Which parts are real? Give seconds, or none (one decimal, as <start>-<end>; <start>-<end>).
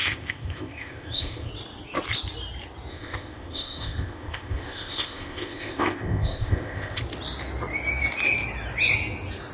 1.5-2.9; 7.0-9.5